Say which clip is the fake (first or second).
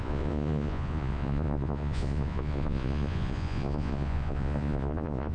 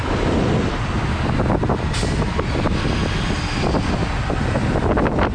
first